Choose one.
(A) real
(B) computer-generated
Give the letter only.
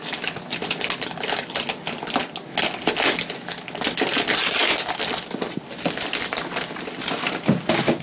A